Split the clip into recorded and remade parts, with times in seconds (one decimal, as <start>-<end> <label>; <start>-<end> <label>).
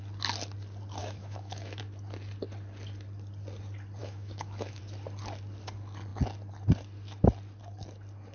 0.0-1.0 recorded; 1.0-1.8 remade; 1.8-4.0 recorded; 4.0-4.8 remade; 4.8-8.3 recorded